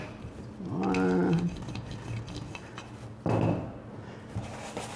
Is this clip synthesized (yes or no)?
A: no